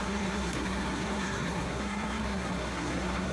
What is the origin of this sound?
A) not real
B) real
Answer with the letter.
A